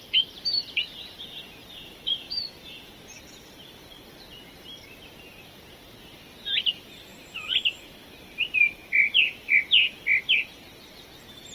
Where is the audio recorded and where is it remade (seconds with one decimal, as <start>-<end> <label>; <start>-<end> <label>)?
0.0-1.6 recorded; 1.6-4.8 remade; 4.8-7.1 recorded; 7.1-10.2 remade; 10.2-11.5 recorded